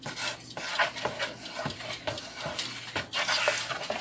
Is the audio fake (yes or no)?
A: no